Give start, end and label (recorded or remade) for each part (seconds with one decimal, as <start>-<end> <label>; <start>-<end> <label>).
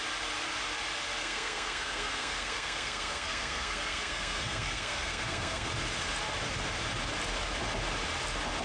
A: 0.0-1.2 recorded; 1.2-5.7 remade; 5.7-8.6 recorded